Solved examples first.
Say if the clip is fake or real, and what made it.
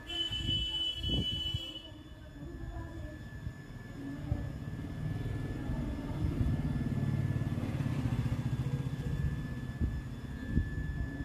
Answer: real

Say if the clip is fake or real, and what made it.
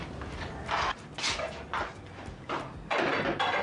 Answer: real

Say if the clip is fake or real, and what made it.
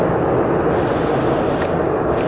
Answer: real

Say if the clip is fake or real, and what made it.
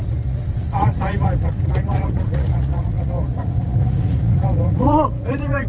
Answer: fake, vocoder, Vocos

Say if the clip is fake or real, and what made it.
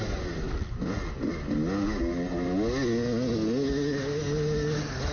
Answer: real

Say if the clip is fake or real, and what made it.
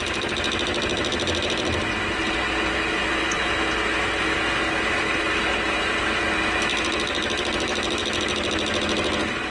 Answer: real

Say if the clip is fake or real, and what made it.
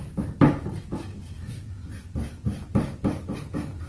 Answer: real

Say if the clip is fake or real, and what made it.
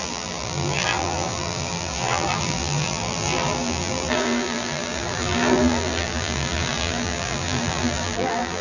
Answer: fake, vocoder, BigVGAN v2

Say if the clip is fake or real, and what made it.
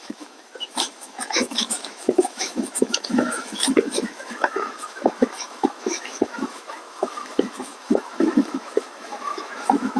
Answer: fake, autoencoder, DAC-VAE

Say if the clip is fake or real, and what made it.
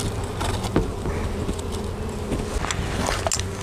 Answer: real